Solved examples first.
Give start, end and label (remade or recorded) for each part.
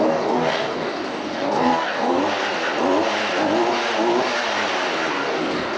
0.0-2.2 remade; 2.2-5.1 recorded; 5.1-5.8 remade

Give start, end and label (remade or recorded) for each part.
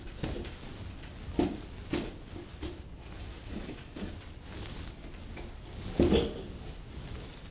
0.0-3.3 recorded; 3.3-4.1 remade; 4.1-7.5 recorded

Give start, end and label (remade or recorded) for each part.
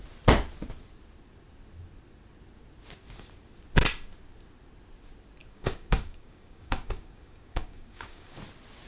0.0-5.4 recorded; 5.4-8.4 remade; 8.4-8.9 recorded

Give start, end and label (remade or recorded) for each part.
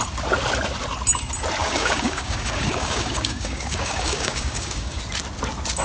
0.0-1.6 recorded; 1.6-5.0 remade; 5.0-5.8 recorded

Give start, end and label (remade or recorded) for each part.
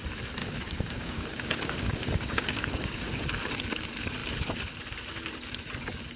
0.0-0.4 recorded; 0.4-3.2 remade; 3.2-6.2 recorded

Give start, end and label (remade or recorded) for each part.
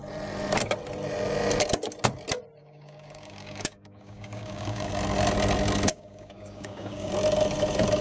0.0-2.6 recorded; 2.6-4.9 remade; 4.9-5.9 recorded; 5.9-7.1 remade; 7.1-8.0 recorded